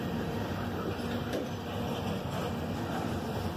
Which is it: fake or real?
real